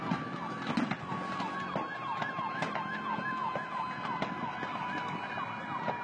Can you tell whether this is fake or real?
real